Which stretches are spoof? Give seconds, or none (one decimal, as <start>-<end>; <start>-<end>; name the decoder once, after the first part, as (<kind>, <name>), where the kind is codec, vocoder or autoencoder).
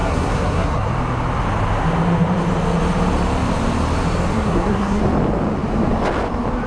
0.0-0.9 (codec, SNAC); 4.3-5.0